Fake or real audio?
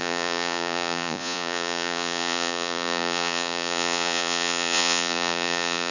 fake